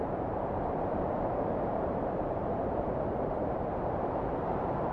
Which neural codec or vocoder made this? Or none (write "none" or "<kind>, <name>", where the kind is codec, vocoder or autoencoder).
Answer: vocoder, BigVGAN v2